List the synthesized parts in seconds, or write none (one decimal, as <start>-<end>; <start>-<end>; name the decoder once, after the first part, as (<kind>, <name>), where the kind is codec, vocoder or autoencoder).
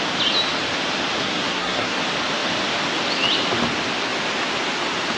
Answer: 1.2-2.0 (codec, SNAC)